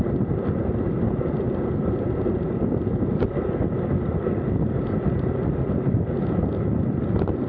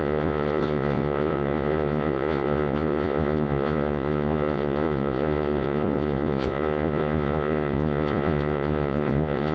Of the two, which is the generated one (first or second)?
second